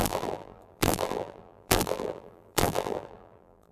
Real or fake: fake